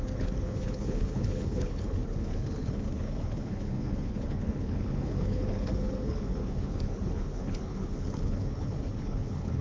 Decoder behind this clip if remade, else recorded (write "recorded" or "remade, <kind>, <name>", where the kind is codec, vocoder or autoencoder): remade, codec, HILCodec